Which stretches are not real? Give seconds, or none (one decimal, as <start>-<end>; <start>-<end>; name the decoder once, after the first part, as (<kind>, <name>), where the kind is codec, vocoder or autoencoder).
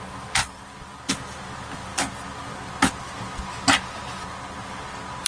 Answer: 0.4-1.1 (vocoder, BigVGAN v2)